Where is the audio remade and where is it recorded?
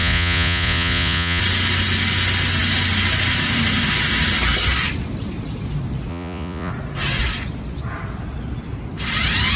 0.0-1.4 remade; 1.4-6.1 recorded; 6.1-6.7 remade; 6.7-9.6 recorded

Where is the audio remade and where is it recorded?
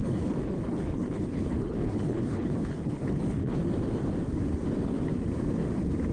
0.0-3.7 remade; 3.7-6.1 recorded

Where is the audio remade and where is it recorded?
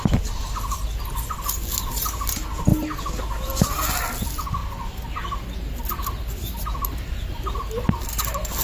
0.0-8.6 recorded